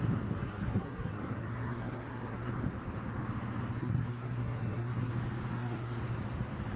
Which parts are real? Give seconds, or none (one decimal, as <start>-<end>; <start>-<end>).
0.0-0.4; 2.5-3.8; 5.1-5.5; 6.0-6.8